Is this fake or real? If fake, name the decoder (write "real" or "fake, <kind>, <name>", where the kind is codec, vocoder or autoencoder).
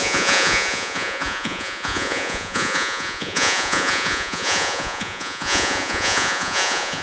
fake, vocoder, Vocos